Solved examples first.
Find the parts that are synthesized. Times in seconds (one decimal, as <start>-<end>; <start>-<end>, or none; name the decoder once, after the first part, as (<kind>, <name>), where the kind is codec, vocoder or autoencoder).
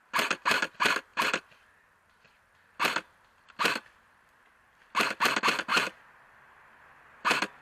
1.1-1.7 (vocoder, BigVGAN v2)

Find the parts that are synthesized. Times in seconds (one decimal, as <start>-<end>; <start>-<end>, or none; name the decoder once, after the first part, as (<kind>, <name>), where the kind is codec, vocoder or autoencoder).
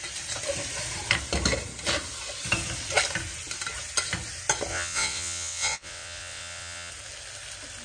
4.7-6.9 (vocoder, WaveNeXt)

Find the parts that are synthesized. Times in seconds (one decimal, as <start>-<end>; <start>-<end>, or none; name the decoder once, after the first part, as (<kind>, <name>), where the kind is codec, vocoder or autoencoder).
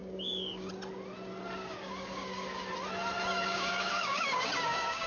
0.0-0.7 (codec, DAC); 1.6-2.7; 3.3-5.1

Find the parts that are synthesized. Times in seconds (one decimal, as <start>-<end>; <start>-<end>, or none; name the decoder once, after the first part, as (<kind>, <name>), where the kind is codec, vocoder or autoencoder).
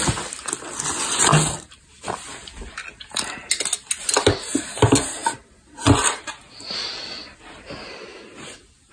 none